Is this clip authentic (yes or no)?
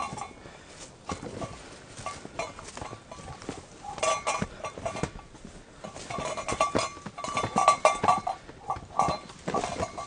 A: yes